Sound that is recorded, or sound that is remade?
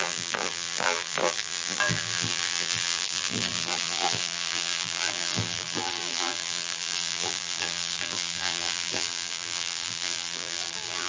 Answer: remade